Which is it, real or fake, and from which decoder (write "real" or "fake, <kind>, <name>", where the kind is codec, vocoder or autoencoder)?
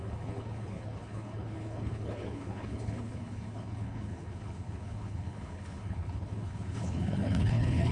fake, codec, HILCodec